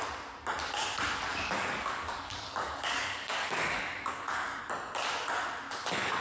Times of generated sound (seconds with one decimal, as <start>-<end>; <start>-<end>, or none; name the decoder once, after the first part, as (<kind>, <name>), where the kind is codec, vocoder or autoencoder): 1.3-4.6 (codec, DAC)